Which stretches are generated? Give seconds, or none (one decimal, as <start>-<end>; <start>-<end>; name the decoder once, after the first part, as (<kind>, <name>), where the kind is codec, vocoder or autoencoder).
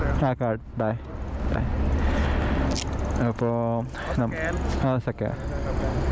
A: none